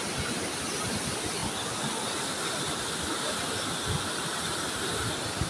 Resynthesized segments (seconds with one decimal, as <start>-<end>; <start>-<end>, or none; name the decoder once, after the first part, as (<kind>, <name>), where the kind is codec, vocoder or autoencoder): none